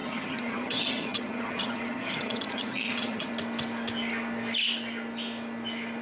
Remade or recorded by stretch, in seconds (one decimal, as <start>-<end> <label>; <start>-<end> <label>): 0.0-3.3 remade; 3.3-6.0 recorded